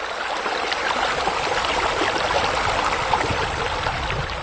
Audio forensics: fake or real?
fake